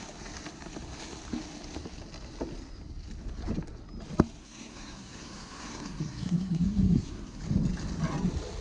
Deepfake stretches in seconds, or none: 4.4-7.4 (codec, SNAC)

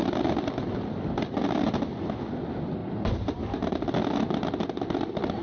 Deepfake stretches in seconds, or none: 2.8-3.8 (vocoder, BigVGAN v2)